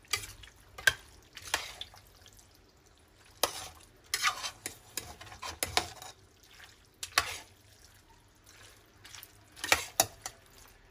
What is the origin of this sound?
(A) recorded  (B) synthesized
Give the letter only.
A